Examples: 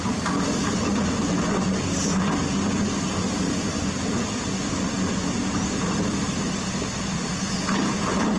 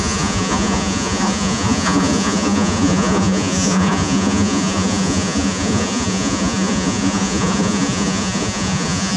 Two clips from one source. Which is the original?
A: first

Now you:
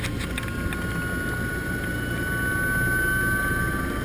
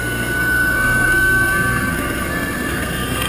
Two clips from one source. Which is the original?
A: first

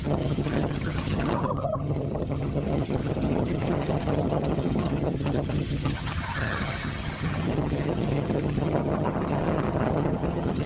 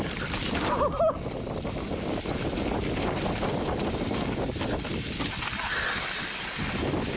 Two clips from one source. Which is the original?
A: second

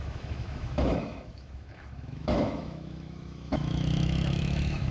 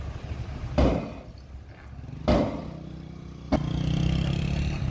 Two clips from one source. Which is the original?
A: second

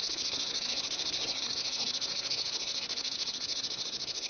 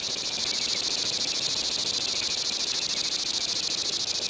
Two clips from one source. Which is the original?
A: second